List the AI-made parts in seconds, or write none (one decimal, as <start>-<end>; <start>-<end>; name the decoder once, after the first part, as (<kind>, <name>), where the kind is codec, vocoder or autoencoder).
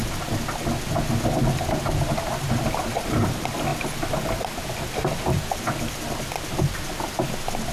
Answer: none